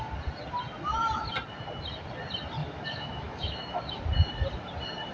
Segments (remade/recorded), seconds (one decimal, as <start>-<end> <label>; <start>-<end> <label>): 0.0-2.6 recorded; 2.6-4.0 remade; 4.0-5.1 recorded